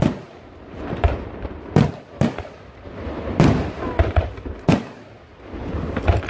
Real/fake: real